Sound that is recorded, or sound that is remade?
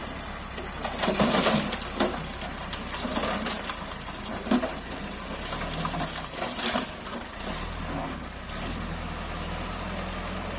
recorded